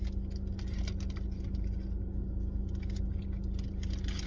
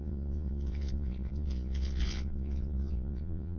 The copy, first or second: second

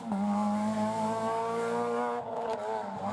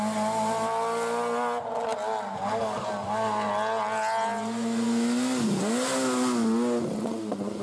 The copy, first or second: first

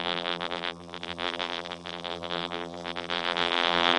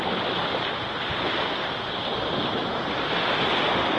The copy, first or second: first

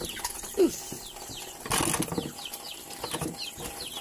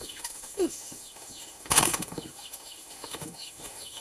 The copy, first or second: second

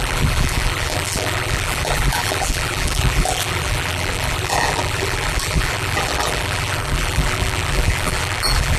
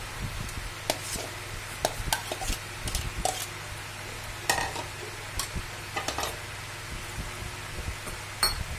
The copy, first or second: first